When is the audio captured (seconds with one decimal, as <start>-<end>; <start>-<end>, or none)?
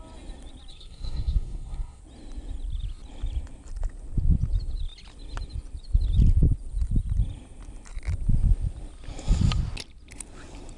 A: 0.0-0.7; 2.0-10.8